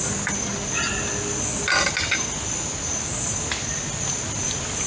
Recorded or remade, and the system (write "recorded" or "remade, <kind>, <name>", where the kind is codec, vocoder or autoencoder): recorded